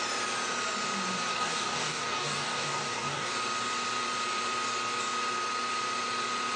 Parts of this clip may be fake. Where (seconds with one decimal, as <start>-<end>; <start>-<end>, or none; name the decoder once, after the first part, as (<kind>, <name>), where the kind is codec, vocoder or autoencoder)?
1.3-3.3 (codec, DAC)